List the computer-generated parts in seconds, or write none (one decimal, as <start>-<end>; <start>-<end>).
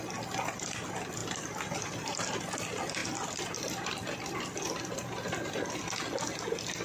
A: 1.2-2.4; 3.0-5.7